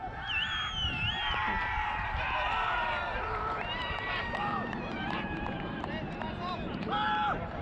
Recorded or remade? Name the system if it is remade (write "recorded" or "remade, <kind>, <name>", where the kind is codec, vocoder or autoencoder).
remade, vocoder, BigVGAN v2